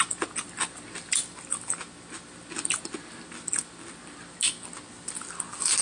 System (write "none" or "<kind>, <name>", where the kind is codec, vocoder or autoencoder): none